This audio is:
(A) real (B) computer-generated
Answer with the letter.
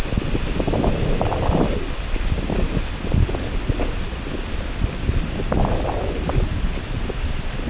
A